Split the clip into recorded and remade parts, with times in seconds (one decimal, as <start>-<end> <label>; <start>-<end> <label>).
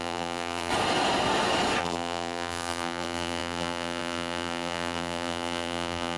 0.0-0.7 remade; 0.7-1.8 recorded; 1.8-6.2 remade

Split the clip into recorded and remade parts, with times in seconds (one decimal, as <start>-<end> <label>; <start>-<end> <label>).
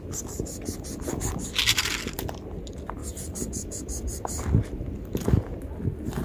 0.0-3.0 recorded; 3.0-5.6 remade; 5.6-6.2 recorded